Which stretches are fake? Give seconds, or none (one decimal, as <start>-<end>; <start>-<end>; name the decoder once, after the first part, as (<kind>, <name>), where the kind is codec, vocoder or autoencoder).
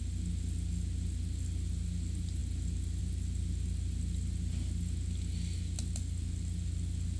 none